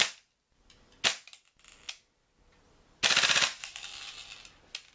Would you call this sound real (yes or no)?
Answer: yes